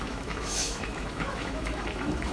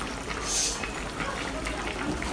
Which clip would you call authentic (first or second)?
second